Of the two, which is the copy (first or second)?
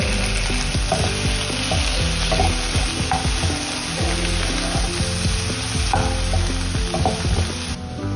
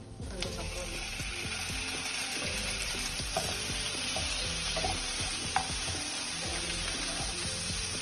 second